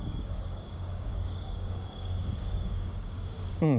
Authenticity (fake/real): fake